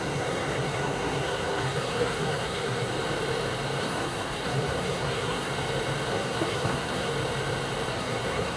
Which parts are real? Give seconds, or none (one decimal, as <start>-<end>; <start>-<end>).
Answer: 2.9-3.8; 5.5-6.1; 7.1-7.9